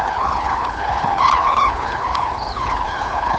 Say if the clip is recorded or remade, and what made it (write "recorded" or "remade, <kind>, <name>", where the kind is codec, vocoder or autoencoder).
remade, codec, HILCodec